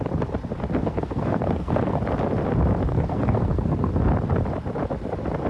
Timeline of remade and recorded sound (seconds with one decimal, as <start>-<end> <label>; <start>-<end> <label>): 0.0-0.7 recorded; 0.7-2.0 remade; 2.0-2.9 recorded; 2.9-3.9 remade; 3.9-5.5 recorded